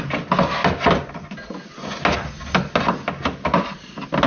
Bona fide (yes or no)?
yes